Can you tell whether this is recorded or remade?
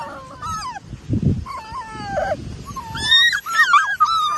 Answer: recorded